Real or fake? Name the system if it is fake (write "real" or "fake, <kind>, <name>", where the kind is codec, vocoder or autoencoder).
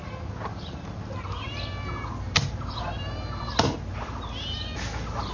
real